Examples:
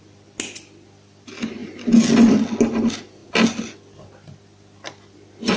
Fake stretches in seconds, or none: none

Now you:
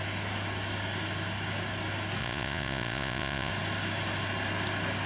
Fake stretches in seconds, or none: 2.2-3.5 (vocoder, Vocos)

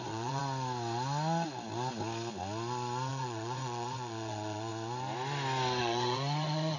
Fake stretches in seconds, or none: 0.0-0.4 (vocoder, Vocos); 3.1-4.7; 5.8-6.8